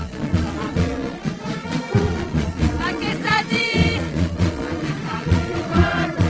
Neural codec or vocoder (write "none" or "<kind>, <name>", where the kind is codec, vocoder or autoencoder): vocoder, Vocos